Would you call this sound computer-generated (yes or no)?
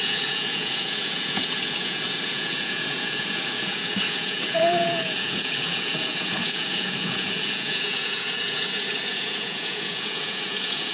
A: yes